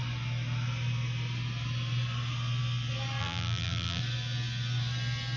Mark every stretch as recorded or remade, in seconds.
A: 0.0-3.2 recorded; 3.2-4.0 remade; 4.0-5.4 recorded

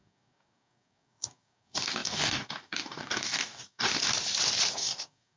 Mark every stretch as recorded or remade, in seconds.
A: 0.0-4.0 remade; 4.0-4.7 recorded; 4.7-5.4 remade

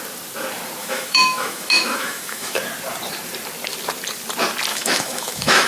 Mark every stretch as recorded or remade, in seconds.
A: 0.0-0.8 recorded; 0.8-2.6 remade; 2.6-4.7 recorded; 4.7-5.7 remade

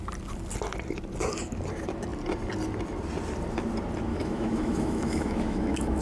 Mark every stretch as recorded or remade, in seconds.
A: 0.0-4.1 recorded; 4.1-6.0 remade

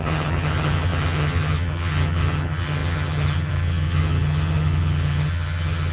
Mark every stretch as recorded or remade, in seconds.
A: 0.0-5.9 remade

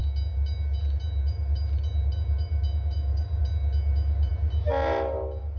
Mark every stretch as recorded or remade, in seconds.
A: 0.0-5.6 recorded

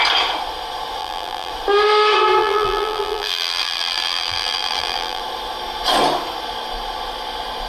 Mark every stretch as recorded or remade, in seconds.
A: 0.0-1.0 recorded; 1.0-1.5 remade; 1.5-2.4 recorded; 2.4-5.2 remade; 5.2-7.7 recorded